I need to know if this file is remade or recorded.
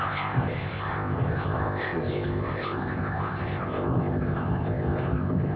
remade